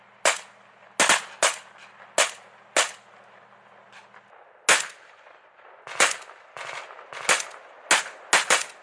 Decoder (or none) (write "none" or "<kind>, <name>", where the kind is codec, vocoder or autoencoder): none